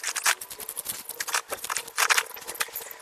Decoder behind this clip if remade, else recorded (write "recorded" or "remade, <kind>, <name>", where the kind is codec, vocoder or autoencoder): recorded